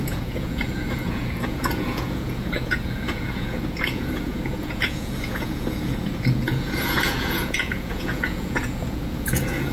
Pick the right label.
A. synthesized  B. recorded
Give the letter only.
A